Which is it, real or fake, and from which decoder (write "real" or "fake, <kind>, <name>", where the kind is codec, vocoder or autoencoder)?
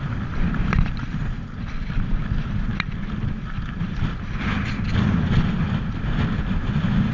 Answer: fake, vocoder, BigVGAN v2